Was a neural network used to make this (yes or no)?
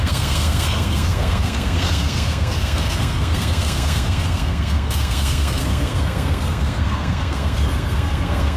yes